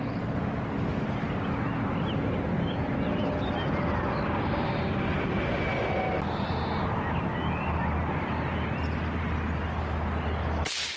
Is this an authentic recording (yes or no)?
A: yes